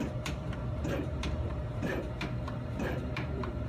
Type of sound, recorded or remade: remade